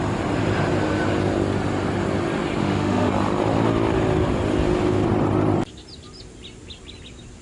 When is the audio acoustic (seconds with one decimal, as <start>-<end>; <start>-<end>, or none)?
0.0-2.6; 3.1-7.4